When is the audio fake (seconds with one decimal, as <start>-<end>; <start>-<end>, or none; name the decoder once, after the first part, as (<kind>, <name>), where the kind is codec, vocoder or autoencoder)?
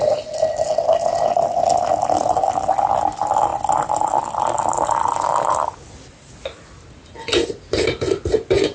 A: none